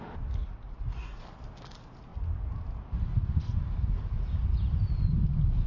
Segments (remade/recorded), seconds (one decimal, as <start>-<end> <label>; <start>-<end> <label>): 0.0-0.4 recorded; 0.4-1.2 remade; 1.2-5.7 recorded